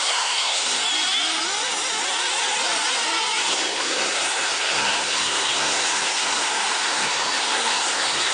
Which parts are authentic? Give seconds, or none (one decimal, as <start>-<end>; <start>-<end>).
0.8-3.4

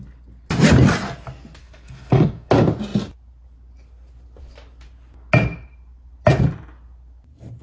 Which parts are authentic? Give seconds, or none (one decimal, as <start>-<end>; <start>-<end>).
0.0-1.6; 2.5-7.6

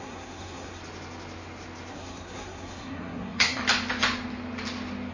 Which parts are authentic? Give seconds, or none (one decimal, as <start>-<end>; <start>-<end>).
0.8-1.9; 3.6-5.1

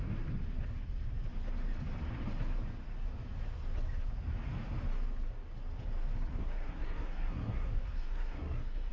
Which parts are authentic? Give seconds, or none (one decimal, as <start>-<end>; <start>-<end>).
0.0-6.4

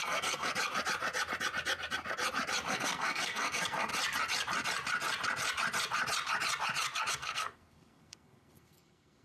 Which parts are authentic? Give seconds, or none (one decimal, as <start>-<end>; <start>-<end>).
0.5-2.7; 3.9-7.1

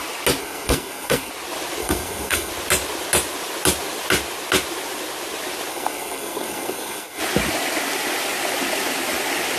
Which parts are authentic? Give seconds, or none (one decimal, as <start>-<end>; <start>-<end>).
0.0-0.4; 1.3-1.8; 2.5-5.7; 7.2-9.6

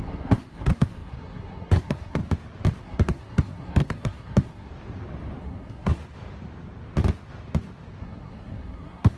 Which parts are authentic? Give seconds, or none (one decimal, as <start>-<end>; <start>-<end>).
2.2-2.8; 4.7-5.4; 6.0-8.0

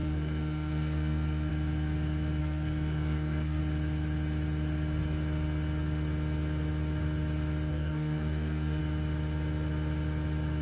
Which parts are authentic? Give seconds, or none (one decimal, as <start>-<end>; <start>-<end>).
1.5-2.4; 3.6-7.7; 8.8-10.6